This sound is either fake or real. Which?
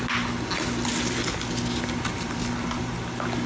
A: real